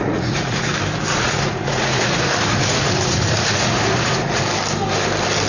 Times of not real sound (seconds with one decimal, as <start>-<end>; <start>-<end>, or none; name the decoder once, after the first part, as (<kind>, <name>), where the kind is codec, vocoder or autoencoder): 0.0-0.7 (vocoder, Vocos); 1.1-4.4